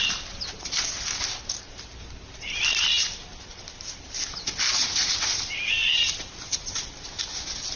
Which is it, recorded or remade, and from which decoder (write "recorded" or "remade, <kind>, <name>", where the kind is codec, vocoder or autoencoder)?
recorded